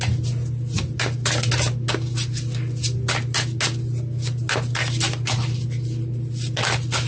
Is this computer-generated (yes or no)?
no